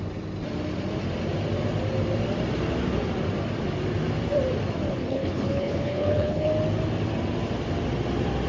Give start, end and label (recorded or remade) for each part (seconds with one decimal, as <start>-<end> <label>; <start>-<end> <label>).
0.0-4.9 recorded; 4.9-6.5 remade; 6.5-8.5 recorded

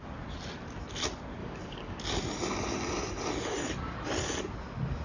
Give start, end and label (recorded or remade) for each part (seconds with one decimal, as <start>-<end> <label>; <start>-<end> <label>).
0.0-1.4 recorded; 1.4-2.0 remade; 2.0-5.0 recorded

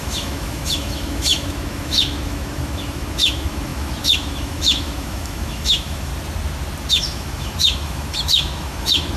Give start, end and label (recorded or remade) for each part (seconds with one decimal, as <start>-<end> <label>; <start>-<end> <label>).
0.0-6.1 remade; 6.1-6.9 recorded; 6.9-9.2 remade

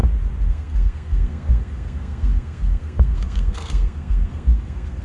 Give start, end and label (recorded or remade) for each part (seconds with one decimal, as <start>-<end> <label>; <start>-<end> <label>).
0.0-0.5 recorded; 0.5-5.0 remade

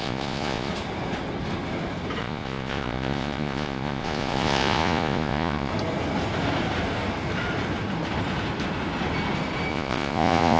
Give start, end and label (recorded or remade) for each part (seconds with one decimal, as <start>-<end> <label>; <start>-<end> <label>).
0.0-0.7 remade; 0.7-2.2 recorded; 2.2-5.7 remade; 5.7-9.7 recorded; 9.7-10.6 remade